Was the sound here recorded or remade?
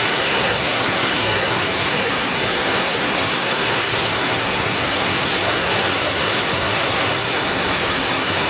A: remade